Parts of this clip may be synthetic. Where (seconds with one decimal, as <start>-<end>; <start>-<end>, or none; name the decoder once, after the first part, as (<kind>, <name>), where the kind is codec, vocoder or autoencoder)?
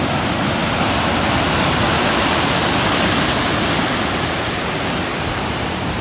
5.1-6.0 (vocoder, BigVGAN v2)